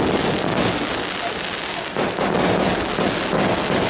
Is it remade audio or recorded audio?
recorded